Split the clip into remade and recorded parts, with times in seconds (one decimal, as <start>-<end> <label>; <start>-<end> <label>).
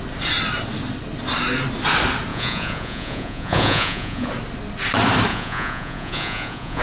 0.0-2.3 recorded; 2.3-4.3 remade; 4.3-5.3 recorded; 5.3-6.8 remade